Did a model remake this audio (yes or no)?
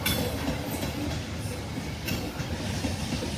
no